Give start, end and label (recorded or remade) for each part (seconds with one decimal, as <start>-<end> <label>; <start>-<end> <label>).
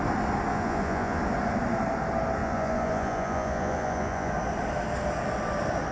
0.0-0.5 recorded; 0.5-1.2 remade; 1.2-2.4 recorded; 2.4-4.3 remade; 4.3-5.9 recorded